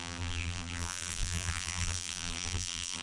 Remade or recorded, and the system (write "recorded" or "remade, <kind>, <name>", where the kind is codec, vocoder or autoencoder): remade, vocoder, BigVGAN v2